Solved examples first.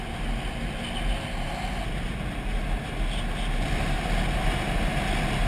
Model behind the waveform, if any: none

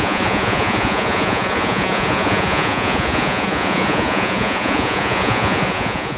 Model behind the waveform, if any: vocoder, Vocos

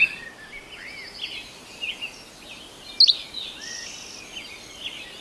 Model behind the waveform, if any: none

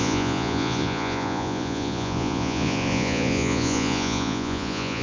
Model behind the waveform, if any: vocoder, Vocos